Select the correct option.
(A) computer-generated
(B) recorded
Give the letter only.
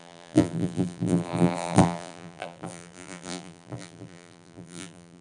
A